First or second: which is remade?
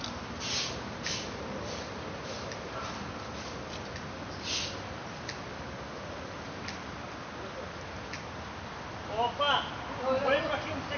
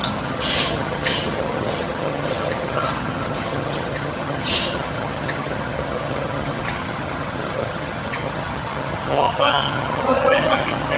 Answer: second